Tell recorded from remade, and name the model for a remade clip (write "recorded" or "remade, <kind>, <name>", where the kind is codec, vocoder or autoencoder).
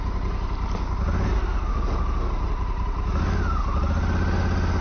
recorded